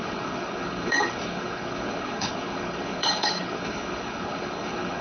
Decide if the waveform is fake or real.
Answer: fake